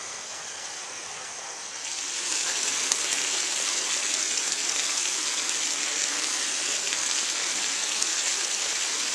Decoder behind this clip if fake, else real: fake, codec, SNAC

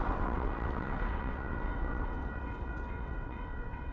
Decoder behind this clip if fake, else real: fake, vocoder, WaveNeXt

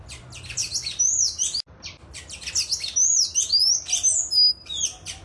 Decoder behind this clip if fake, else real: real